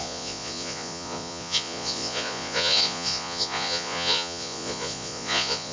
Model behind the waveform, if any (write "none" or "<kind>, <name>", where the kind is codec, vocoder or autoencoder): vocoder, Vocos